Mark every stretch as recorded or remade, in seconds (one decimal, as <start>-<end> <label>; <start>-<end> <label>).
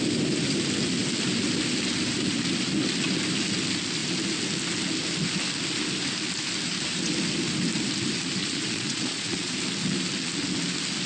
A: 0.0-8.4 recorded; 8.4-9.5 remade; 9.5-11.1 recorded